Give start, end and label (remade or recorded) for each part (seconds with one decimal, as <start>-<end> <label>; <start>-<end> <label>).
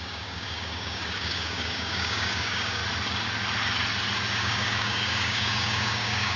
0.0-2.8 remade; 2.8-4.3 recorded; 4.3-6.4 remade